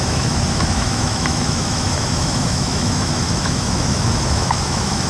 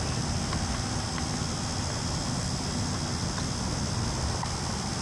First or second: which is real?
second